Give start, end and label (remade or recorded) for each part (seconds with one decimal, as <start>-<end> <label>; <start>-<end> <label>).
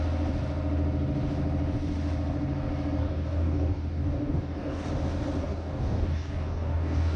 0.0-3.0 recorded; 3.0-4.9 remade; 4.9-5.4 recorded; 5.4-7.2 remade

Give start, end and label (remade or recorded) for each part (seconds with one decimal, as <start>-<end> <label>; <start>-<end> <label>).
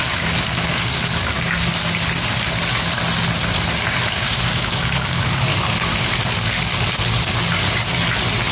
0.0-1.7 remade; 1.7-4.1 recorded; 4.1-5.5 remade; 5.5-6.3 recorded; 6.3-6.7 remade; 6.7-8.5 recorded